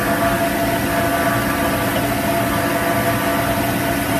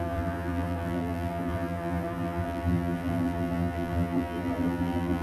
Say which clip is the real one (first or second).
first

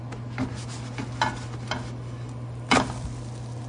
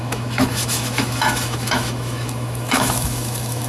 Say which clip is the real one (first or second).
first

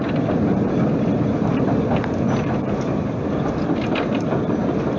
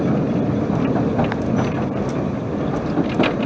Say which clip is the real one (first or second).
second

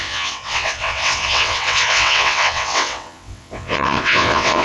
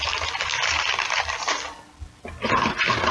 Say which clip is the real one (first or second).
second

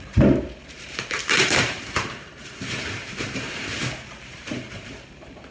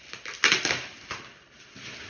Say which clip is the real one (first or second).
second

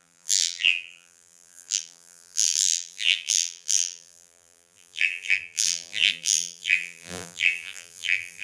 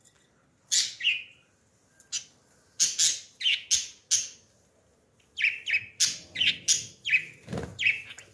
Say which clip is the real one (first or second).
second